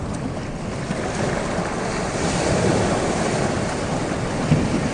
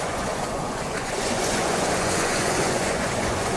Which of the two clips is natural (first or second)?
first